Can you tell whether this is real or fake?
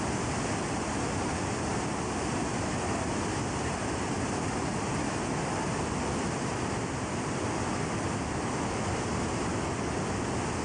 real